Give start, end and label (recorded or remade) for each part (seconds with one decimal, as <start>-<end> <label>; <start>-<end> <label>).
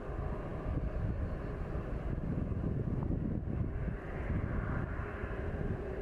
0.0-6.0 recorded